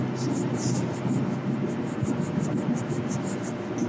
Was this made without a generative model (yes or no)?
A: yes